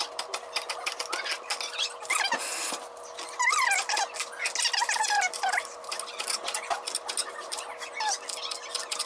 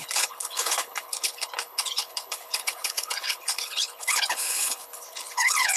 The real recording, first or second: first